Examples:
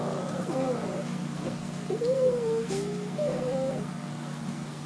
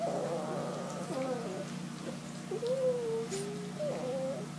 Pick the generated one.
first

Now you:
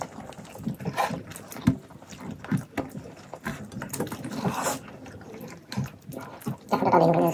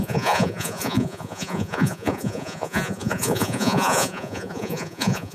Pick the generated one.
second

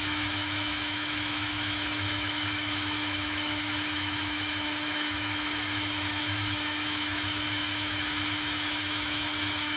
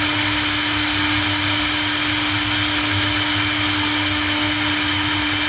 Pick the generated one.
first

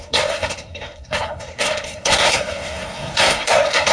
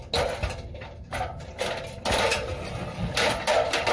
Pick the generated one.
first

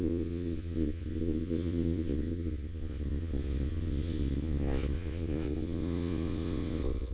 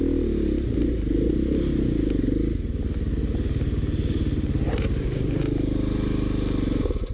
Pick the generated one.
first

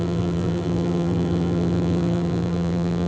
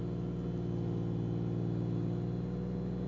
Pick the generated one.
first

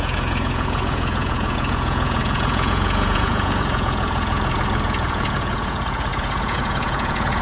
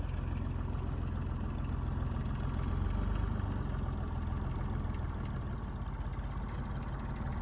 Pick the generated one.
first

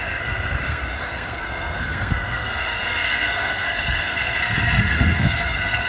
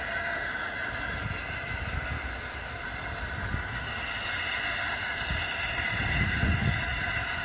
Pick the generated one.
first